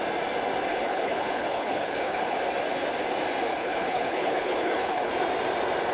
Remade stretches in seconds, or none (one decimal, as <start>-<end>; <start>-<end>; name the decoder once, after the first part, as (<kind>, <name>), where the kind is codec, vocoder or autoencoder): 0.7-2.4 (codec, HILCodec); 3.5-5.1